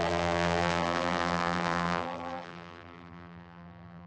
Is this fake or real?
fake